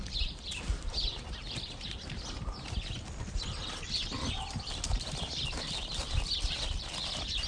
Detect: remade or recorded remade